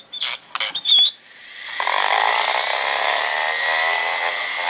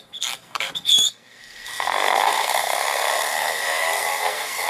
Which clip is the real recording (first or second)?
first